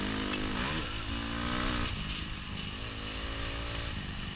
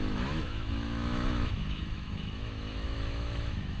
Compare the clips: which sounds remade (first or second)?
second